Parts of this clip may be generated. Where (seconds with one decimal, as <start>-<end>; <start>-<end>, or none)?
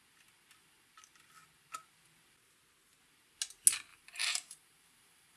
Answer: 3.9-5.4